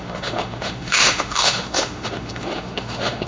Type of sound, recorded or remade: remade